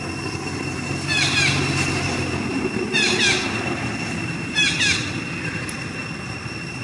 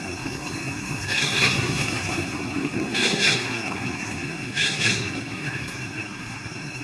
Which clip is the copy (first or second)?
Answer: second